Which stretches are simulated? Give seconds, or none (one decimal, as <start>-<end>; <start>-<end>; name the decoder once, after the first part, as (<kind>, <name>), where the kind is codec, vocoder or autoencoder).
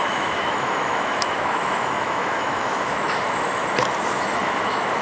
0.0-3.6 (autoencoder, DAC-VAE); 4.2-5.0